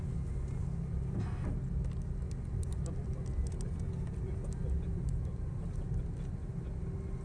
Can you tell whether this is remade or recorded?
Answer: recorded